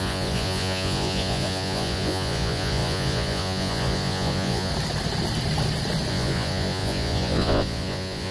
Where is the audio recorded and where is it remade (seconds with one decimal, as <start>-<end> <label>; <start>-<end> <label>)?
0.0-4.7 remade; 4.7-6.1 recorded; 6.1-8.3 remade